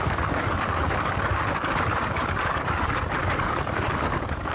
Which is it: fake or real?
fake